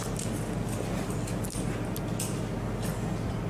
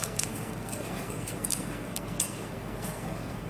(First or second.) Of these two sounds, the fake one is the second